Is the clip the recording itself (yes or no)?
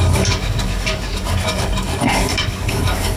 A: no